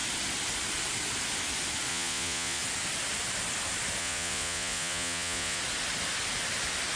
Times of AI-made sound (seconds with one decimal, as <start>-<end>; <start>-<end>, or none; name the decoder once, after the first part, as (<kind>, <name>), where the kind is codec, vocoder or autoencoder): 1.9-2.6 (vocoder, Vocos); 4.0-5.6